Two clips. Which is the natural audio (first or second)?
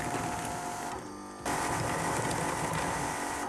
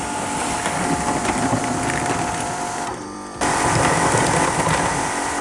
first